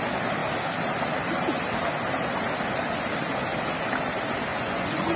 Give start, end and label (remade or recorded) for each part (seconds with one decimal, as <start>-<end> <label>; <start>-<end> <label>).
0.0-4.5 recorded; 4.5-5.2 remade